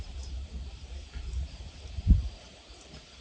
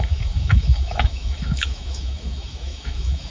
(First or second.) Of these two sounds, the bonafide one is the first